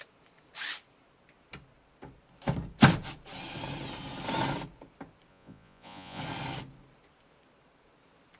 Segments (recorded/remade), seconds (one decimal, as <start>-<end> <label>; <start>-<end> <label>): 0.0-5.3 recorded; 5.3-6.2 remade; 6.2-8.4 recorded